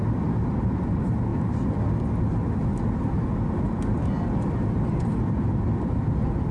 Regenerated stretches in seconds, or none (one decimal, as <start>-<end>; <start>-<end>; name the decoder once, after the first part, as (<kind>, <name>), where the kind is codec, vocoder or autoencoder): 1.3-2.0 (vocoder, BigVGAN v2); 5.2-6.5